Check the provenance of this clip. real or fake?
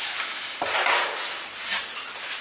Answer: real